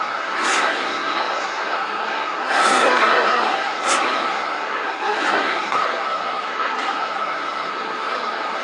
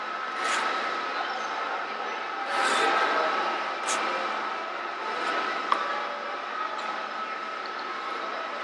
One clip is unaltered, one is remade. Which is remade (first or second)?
first